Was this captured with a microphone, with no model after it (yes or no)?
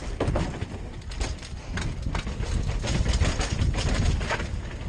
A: yes